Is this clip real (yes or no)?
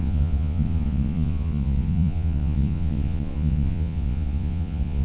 no